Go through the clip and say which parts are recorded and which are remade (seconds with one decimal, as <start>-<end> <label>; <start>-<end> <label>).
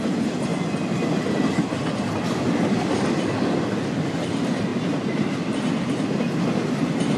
0.0-7.2 recorded